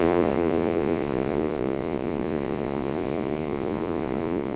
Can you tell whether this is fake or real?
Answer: fake